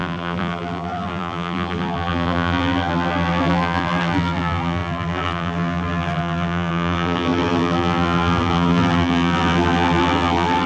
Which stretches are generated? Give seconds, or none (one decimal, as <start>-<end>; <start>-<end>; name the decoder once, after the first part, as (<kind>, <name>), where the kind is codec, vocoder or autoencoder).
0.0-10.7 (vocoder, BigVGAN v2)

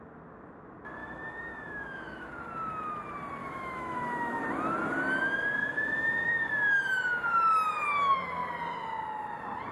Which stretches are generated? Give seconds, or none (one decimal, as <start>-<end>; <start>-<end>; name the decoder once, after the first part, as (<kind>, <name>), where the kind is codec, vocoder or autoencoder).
1.0-2.3 (autoencoder, DAC-VAE); 3.4-4.4; 5.6-6.3

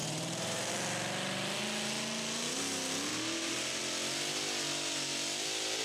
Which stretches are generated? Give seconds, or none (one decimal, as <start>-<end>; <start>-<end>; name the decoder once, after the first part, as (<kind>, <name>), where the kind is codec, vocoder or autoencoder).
0.0-0.7 (vocoder, BigVGAN v2); 3.1-3.8

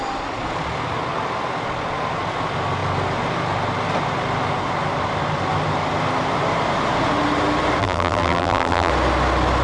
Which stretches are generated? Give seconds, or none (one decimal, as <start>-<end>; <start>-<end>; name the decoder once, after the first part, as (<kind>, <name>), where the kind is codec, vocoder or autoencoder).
7.8-8.9 (vocoder, BigVGAN v2)

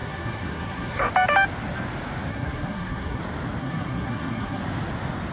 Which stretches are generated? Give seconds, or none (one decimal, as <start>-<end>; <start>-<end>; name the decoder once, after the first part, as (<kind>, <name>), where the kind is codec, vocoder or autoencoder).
0.0-1.1 (codec, SNAC); 2.3-3.2; 3.6-4.6